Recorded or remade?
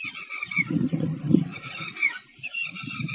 remade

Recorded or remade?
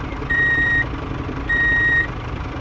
remade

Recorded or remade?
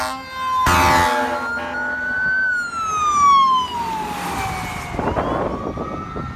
recorded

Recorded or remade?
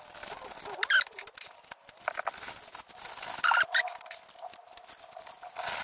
recorded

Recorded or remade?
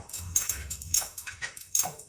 remade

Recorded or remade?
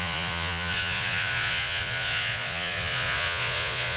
remade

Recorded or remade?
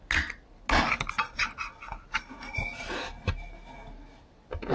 recorded